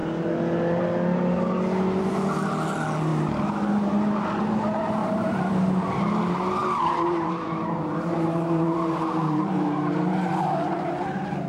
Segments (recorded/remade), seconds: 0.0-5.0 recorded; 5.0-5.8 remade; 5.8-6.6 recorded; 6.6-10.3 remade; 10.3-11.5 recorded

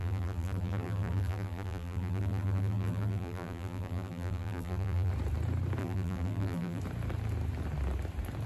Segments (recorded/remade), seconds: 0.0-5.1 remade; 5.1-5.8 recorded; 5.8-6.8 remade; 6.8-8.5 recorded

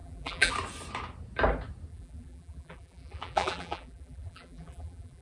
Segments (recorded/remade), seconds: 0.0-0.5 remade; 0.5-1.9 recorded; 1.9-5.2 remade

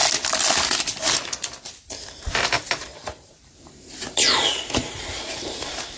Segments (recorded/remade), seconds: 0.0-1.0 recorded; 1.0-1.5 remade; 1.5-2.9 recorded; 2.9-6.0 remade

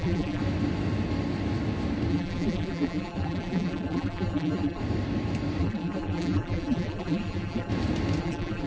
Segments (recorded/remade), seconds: 0.0-0.4 remade; 0.4-2.1 recorded; 2.1-4.8 remade; 4.8-5.6 recorded; 5.6-7.7 remade; 7.7-8.2 recorded; 8.2-8.7 remade